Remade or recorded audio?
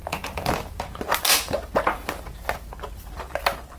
recorded